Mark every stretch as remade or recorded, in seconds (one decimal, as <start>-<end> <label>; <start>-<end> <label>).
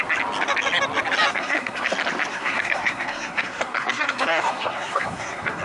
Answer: 0.0-1.3 recorded; 1.3-1.9 remade; 1.9-2.3 recorded; 2.3-5.6 remade